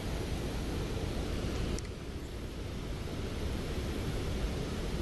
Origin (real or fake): real